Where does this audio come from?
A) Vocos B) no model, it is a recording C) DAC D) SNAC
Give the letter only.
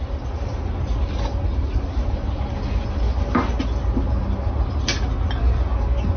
B